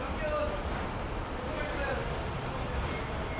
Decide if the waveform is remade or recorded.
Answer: recorded